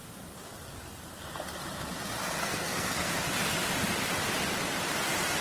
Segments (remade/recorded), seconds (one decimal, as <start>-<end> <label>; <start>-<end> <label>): 0.0-2.4 recorded; 2.4-3.1 remade; 3.1-5.4 recorded